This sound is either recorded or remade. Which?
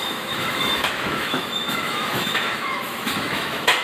remade